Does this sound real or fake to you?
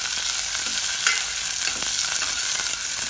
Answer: real